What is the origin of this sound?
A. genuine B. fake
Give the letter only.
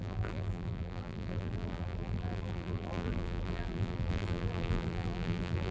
B